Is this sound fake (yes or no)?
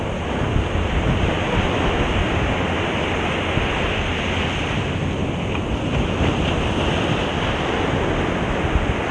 no